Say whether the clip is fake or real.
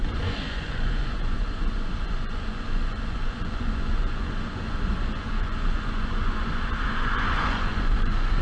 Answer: fake